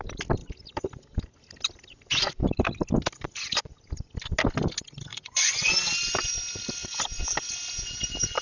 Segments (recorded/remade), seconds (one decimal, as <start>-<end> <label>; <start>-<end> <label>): 0.0-5.1 recorded; 5.1-5.7 remade; 5.7-8.4 recorded